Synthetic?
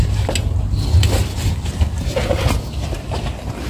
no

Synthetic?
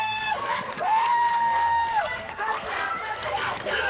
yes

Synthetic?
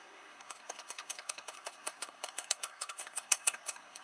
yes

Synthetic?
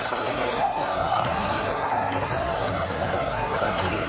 yes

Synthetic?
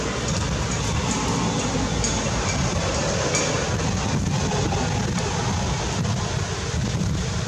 no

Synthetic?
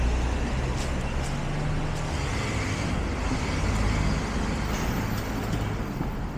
no